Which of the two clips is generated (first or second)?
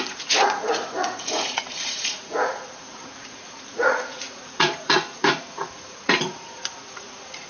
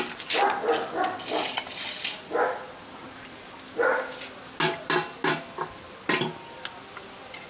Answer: first